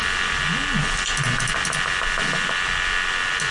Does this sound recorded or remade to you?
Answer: recorded